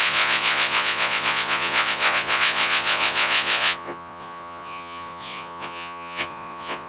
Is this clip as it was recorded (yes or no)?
no